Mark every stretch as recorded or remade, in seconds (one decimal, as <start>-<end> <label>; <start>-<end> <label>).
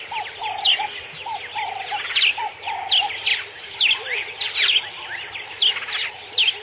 0.0-6.6 recorded